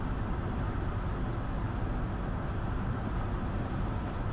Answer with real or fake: real